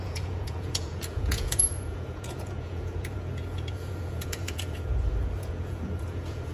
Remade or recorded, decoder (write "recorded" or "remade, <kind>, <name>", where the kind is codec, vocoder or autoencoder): remade, vocoder, Vocos